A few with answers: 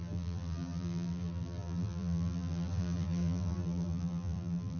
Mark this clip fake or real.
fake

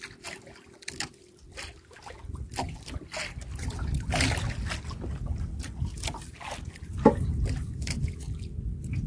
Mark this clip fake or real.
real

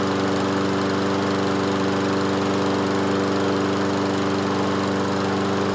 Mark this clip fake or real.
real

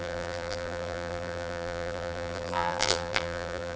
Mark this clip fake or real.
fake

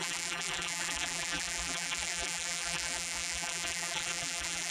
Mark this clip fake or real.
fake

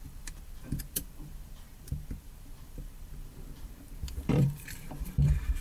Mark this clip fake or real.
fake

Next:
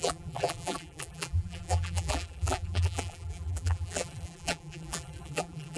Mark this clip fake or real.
fake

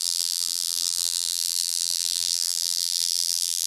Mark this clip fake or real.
fake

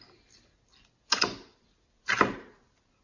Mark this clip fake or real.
real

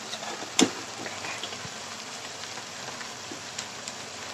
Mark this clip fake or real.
fake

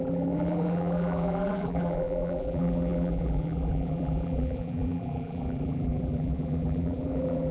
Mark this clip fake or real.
fake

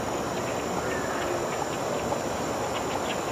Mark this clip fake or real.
real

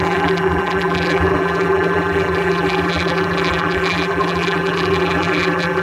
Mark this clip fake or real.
fake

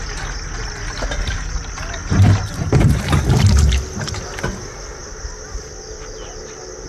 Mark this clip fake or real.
real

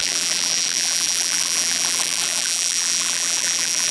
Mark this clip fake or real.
fake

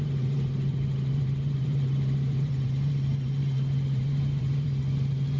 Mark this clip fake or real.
fake